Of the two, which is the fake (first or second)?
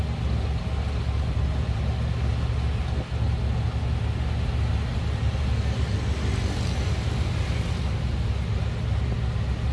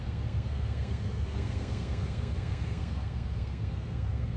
second